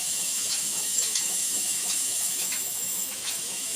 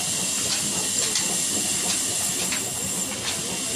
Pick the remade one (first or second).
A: first